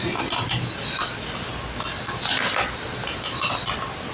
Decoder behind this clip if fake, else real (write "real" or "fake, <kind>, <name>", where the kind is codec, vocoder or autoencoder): real